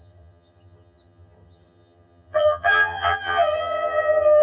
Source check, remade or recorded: remade